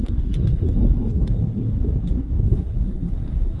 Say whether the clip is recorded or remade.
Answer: remade